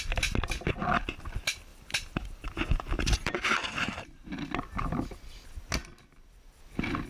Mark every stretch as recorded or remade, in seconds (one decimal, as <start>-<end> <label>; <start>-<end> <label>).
0.0-1.7 recorded; 1.7-4.2 remade; 4.2-7.1 recorded